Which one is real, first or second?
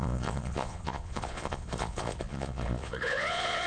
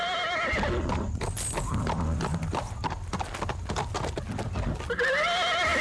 second